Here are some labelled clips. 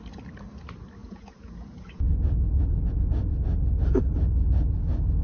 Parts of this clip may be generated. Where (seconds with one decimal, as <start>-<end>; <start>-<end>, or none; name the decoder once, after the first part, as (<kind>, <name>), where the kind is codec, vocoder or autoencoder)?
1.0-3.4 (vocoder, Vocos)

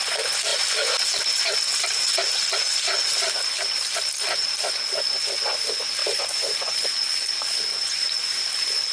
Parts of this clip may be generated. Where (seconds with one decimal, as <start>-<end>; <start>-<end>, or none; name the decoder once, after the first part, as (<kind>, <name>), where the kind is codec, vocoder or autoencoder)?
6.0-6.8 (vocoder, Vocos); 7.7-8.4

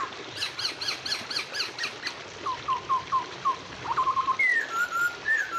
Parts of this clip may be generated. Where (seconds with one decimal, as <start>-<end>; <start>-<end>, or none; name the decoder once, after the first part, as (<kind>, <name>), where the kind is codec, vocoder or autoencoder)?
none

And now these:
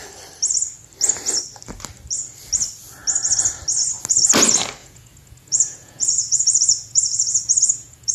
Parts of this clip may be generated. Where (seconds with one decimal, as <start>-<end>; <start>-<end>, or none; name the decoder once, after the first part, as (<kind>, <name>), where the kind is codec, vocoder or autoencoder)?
4.8-8.1 (vocoder, Vocos)

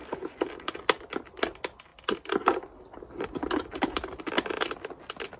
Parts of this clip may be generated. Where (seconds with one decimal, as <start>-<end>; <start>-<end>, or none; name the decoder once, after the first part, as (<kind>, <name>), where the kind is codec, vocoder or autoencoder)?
none

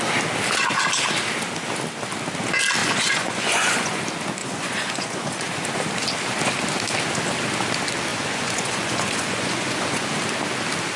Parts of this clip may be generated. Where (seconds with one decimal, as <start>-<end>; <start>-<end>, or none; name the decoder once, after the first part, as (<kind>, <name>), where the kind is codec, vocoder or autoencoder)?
2.8-4.0 (vocoder, Vocos); 4.4-5.4; 8.1-10.1

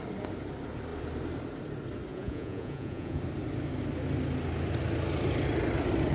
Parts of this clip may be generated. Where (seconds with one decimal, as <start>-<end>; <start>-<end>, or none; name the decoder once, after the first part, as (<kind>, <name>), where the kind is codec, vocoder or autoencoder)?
2.1-3.2 (vocoder, Vocos)

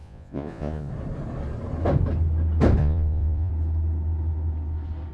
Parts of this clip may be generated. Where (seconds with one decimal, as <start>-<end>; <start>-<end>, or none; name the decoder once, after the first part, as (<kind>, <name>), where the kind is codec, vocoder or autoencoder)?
0.0-0.9 (vocoder, Vocos); 2.8-3.5